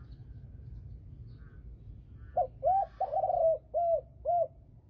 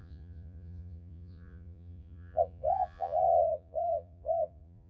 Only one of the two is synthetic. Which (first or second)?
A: second